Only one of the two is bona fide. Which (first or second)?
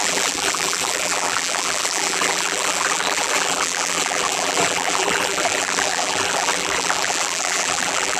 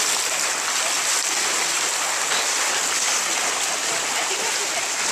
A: second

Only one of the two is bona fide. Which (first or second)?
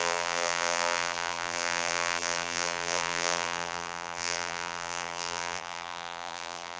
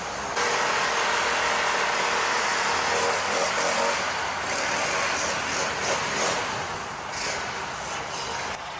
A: second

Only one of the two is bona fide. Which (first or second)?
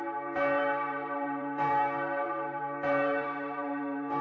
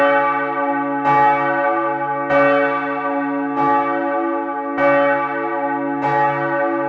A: second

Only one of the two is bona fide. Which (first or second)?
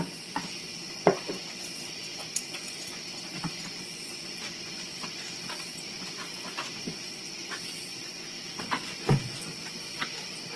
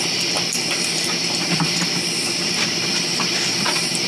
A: second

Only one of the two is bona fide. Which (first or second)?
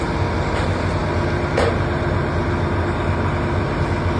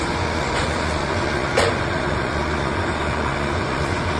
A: first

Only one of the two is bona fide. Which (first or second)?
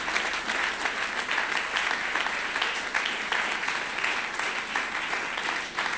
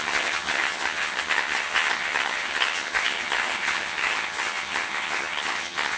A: first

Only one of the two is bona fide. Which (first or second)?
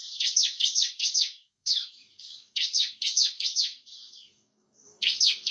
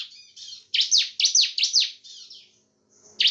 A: second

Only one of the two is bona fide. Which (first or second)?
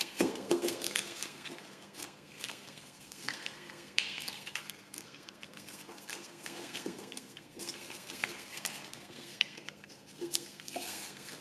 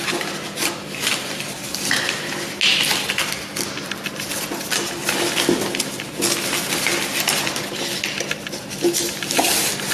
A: second